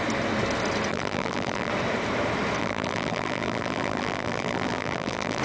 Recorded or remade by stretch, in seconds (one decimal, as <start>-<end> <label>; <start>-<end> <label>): 0.0-0.9 recorded; 0.9-1.7 remade; 1.7-2.6 recorded; 2.6-5.4 remade